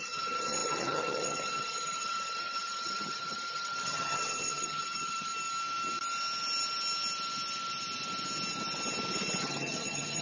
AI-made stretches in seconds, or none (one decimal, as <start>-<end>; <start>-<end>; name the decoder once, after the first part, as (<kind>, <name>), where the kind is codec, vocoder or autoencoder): 0.0-5.3 (vocoder, HiFi-GAN); 9.4-10.2